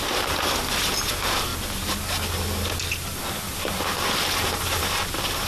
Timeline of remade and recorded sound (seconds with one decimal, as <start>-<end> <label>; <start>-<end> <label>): 0.0-5.5 recorded